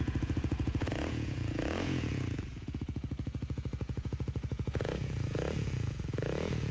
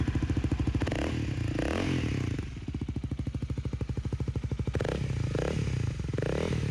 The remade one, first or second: first